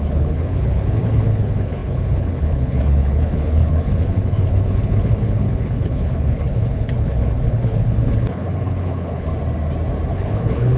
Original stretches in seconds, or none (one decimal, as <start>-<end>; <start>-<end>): 9.3-10.1